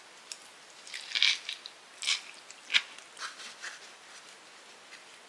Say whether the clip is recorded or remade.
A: recorded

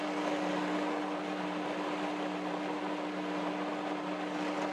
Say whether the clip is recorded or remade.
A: recorded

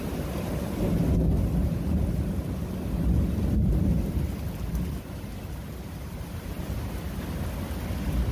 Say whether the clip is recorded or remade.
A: recorded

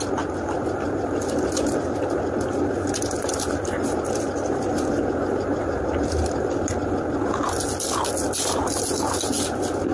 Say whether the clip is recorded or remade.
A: recorded